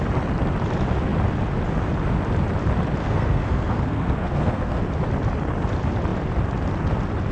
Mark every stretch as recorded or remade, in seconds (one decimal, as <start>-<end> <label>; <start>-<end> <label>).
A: 0.0-3.0 recorded; 3.0-4.8 remade; 4.8-7.3 recorded